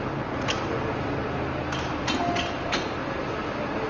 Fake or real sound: real